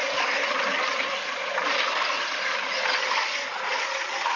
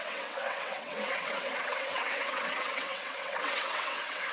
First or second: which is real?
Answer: first